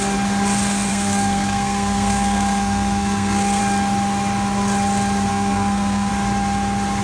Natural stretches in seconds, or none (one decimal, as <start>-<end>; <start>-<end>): 0.0-0.9; 3.6-5.3; 6.1-7.0